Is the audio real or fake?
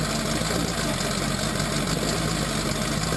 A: real